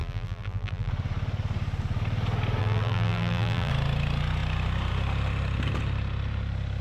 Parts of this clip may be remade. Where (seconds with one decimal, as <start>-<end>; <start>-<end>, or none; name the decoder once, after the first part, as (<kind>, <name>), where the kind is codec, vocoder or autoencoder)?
0.0-0.9 (vocoder, BigVGAN v2); 2.6-3.7